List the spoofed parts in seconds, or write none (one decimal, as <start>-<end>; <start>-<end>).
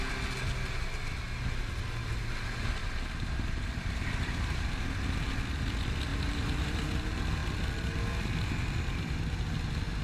2.8-4.0; 6.1-6.8